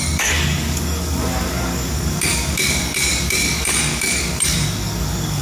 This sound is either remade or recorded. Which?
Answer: remade